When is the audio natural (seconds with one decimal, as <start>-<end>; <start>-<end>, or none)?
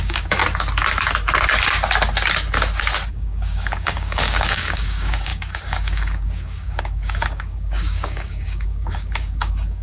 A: 0.4-3.1